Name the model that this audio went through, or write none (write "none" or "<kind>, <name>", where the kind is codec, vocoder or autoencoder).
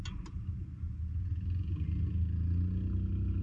none